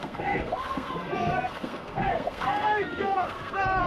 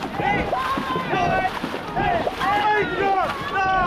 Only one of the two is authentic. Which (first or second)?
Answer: second